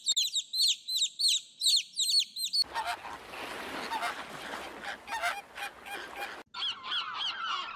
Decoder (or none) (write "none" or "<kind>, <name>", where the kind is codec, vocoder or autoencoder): none